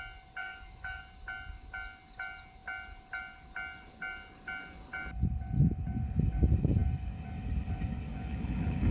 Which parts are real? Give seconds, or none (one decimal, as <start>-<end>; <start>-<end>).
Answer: 0.0-0.4; 1.0-8.1